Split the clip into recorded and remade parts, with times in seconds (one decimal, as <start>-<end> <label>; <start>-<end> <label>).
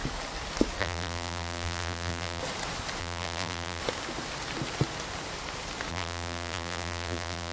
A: 0.0-0.8 recorded; 0.8-2.4 remade; 2.4-3.0 recorded; 3.0-3.8 remade; 3.8-5.9 recorded; 5.9-7.5 remade